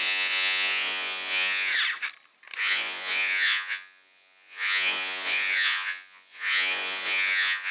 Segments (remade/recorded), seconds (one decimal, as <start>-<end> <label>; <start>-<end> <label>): 0.0-1.7 remade; 1.7-2.6 recorded; 2.6-7.7 remade